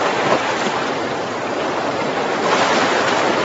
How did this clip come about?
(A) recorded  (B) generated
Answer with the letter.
A